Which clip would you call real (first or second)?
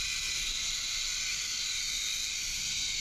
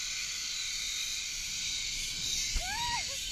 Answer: first